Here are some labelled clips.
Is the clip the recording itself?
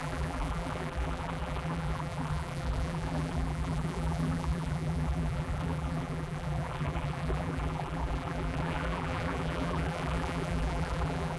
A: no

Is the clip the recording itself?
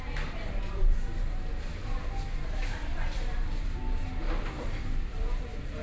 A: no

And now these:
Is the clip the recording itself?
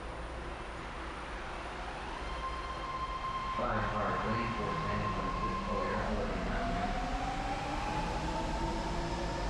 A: yes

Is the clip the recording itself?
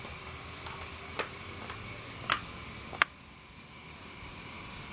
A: no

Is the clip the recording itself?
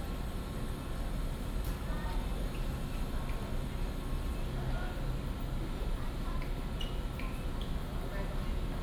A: yes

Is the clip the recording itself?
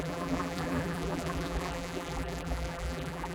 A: no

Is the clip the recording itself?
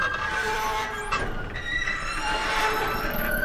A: no